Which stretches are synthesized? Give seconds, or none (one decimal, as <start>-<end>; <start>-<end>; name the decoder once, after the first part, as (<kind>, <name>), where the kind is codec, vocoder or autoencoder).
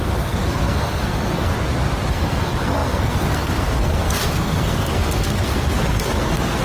0.0-1.5 (codec, SNAC); 2.1-6.6